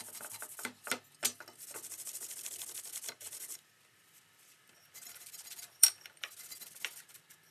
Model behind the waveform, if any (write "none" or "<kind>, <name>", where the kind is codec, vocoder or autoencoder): vocoder, BigVGAN v2